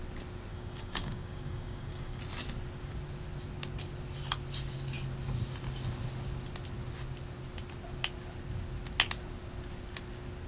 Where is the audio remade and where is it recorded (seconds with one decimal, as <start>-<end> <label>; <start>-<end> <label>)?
0.0-0.5 recorded; 0.5-2.2 remade; 2.2-10.5 recorded